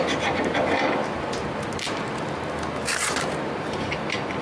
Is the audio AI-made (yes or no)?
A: no